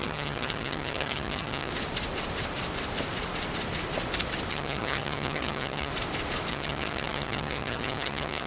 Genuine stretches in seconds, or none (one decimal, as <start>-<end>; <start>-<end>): 1.7-4.5; 5.9-6.5